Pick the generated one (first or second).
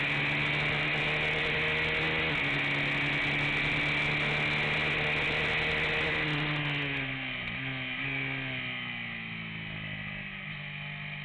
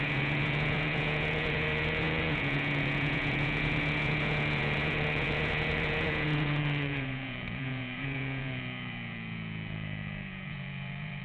second